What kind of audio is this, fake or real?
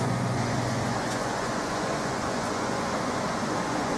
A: fake